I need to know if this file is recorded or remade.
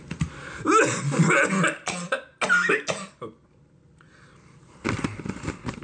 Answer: recorded